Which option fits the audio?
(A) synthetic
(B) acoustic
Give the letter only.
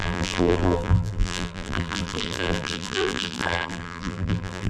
A